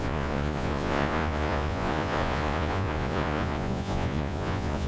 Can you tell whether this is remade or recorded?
remade